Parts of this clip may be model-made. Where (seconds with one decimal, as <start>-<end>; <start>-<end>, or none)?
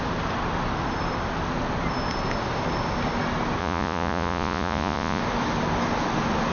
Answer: 3.6-5.2